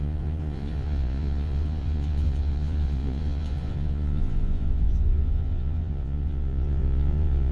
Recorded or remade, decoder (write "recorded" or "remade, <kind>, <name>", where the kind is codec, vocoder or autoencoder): remade, vocoder, Vocos